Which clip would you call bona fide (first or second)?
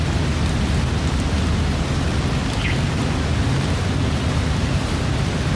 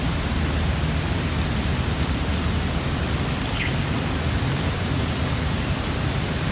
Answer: first